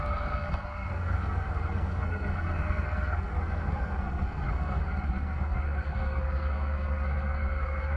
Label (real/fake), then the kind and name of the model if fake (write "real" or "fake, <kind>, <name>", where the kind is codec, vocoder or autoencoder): fake, codec, SNAC